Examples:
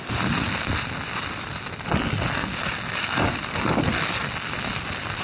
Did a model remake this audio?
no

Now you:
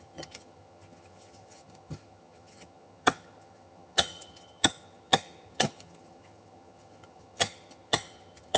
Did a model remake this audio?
yes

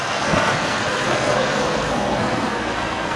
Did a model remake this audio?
yes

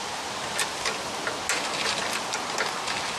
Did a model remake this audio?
no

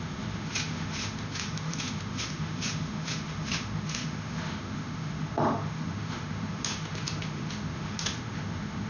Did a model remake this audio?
yes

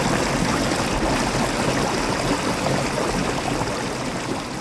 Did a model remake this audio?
no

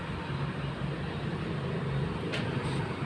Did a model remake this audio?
no